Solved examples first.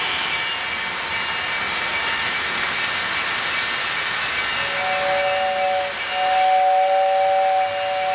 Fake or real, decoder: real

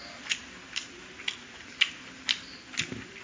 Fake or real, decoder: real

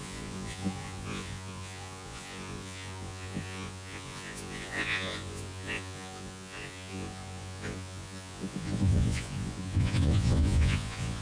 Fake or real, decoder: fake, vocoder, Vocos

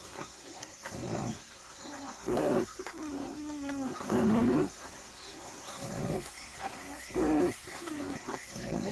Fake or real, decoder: fake, codec, SNAC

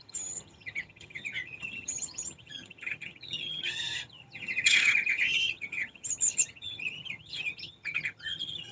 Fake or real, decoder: fake, vocoder, HiFi-GAN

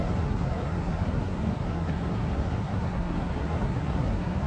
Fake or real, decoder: fake, codec, SNAC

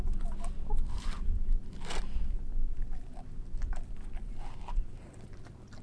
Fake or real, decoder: real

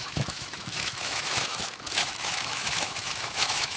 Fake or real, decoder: fake, autoencoder, DAC-VAE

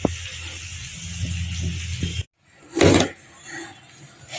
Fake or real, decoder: real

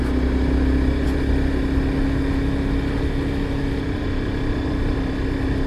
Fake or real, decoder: real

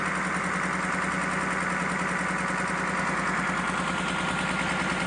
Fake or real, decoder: real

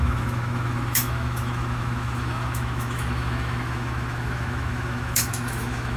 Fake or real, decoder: fake, autoencoder, DAC-VAE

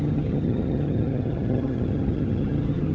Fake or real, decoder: fake, vocoder, HiFi-GAN